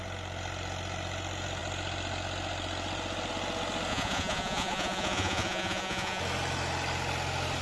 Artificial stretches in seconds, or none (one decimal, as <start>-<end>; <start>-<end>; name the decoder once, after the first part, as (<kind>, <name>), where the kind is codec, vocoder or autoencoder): 3.9-6.2 (vocoder, Vocos)